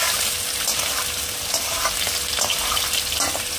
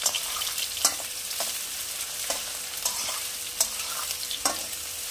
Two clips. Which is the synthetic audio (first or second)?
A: second